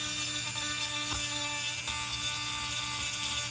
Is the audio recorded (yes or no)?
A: yes